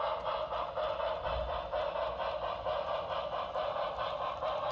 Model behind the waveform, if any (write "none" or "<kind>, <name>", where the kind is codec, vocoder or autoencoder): vocoder, BigVGAN v2